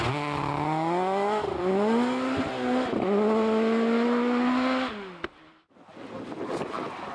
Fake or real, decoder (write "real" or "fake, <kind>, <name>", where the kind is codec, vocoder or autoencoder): real